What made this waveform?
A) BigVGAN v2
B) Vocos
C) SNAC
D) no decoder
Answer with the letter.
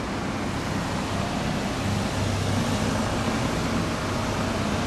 D